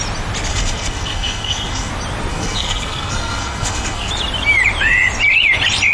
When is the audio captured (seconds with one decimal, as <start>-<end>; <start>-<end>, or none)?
0.0-0.5; 1.9-2.3; 4.1-5.9